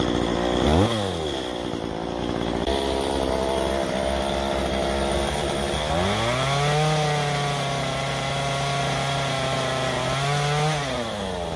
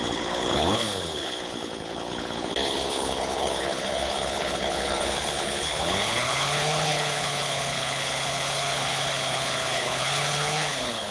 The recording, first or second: first